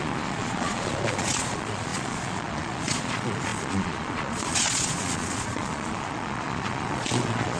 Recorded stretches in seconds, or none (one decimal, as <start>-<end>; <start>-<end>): none